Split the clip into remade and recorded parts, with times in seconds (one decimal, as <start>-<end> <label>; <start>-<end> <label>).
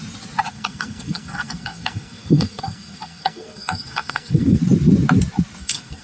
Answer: 0.0-0.5 recorded; 0.5-4.6 remade; 4.6-5.6 recorded; 5.6-6.0 remade